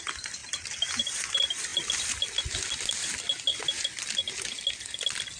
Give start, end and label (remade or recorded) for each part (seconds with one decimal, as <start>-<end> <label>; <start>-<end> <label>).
0.0-5.4 recorded